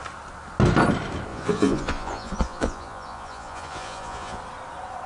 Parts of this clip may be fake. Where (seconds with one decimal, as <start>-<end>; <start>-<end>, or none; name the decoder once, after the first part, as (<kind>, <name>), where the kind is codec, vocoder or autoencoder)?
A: 1.3-4.4 (vocoder, Vocos)